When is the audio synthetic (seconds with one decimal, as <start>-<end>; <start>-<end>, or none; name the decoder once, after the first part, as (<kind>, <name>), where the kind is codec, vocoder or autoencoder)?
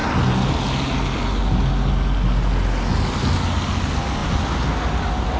none